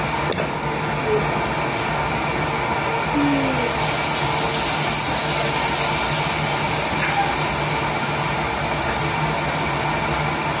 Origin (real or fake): real